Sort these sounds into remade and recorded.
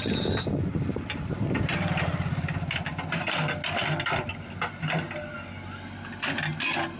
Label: recorded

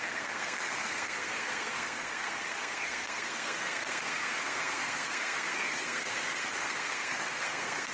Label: remade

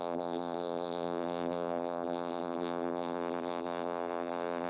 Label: remade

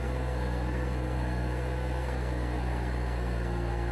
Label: remade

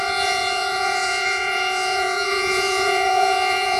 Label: remade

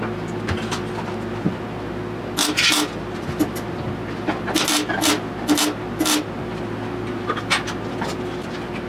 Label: recorded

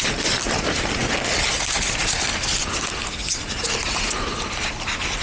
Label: recorded